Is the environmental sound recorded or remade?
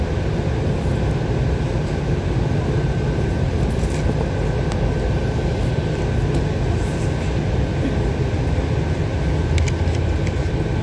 recorded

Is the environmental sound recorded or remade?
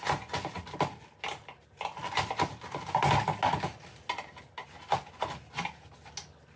recorded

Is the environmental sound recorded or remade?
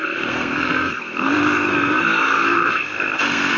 remade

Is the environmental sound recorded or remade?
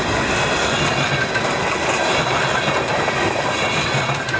recorded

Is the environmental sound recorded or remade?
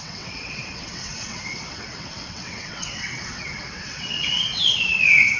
remade